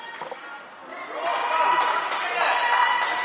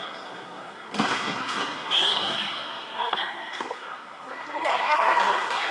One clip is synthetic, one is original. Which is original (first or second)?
first